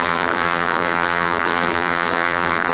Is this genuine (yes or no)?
no